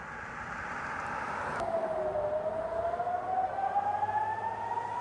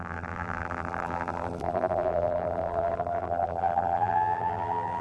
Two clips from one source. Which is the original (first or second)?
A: first